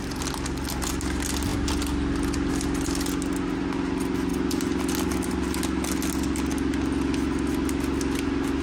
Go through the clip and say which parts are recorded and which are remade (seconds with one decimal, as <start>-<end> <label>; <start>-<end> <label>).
0.0-8.6 recorded